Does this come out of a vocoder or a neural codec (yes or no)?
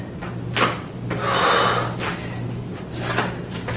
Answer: no